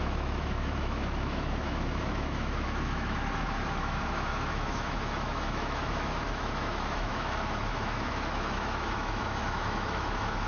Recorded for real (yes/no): no